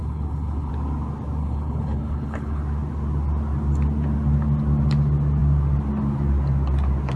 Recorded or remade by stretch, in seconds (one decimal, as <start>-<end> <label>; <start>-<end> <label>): 0.0-0.7 remade; 0.7-1.4 recorded; 1.4-2.6 remade; 2.6-7.2 recorded